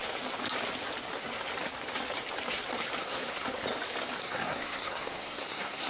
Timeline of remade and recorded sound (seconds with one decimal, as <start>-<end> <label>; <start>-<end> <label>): 0.0-3.0 recorded; 3.0-3.6 remade; 3.6-4.2 recorded; 4.2-5.9 remade